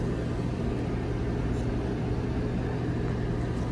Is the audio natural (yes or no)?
yes